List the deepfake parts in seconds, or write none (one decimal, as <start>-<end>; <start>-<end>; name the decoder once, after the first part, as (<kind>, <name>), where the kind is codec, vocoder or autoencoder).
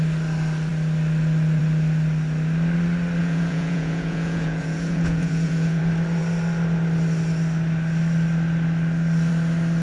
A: 3.2-5.8 (vocoder, Vocos)